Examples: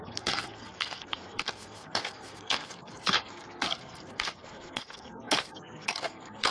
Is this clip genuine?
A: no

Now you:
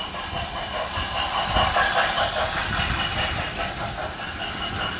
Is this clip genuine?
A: yes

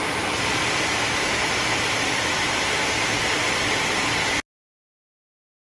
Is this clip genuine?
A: yes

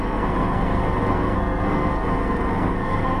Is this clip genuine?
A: no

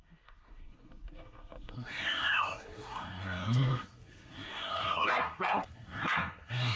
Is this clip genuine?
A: no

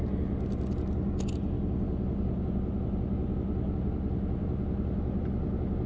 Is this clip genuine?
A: yes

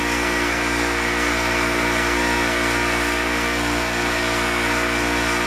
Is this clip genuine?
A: no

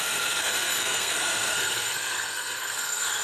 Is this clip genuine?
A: no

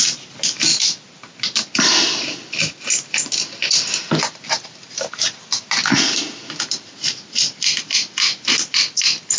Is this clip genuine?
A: yes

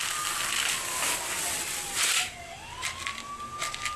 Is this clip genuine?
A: yes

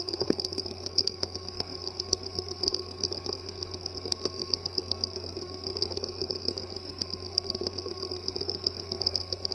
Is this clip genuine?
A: no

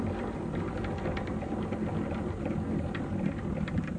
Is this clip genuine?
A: yes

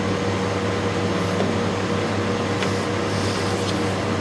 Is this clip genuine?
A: yes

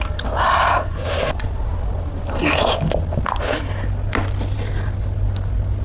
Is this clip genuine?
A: yes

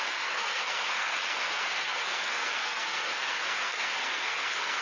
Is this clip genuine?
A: no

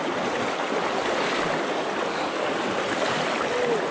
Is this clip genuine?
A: yes